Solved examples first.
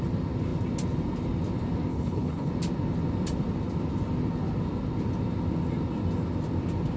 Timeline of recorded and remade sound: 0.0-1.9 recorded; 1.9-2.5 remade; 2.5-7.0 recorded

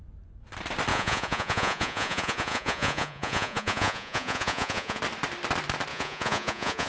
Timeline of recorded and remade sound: 0.0-0.9 recorded; 0.9-5.0 remade; 5.0-5.9 recorded; 5.9-6.9 remade

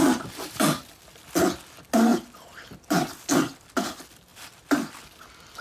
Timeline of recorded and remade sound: 0.0-5.6 recorded

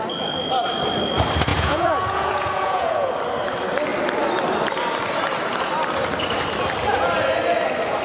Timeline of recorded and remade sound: 0.0-1.5 recorded; 1.5-3.1 remade; 3.1-8.0 recorded

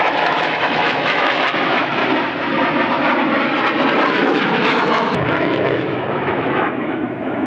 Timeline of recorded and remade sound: 0.0-2.0 remade; 2.0-4.1 recorded; 4.1-7.5 remade

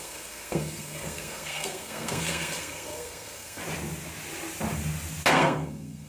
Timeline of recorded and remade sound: 0.0-3.6 remade; 3.6-5.3 recorded; 5.3-6.1 remade

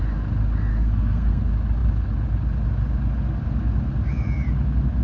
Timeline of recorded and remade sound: 0.0-0.7 recorded; 0.7-1.4 remade; 1.4-5.0 recorded

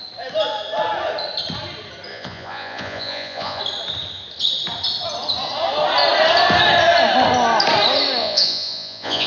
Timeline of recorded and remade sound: 0.0-2.1 recorded; 2.1-3.6 remade; 3.6-8.2 recorded; 8.2-9.3 remade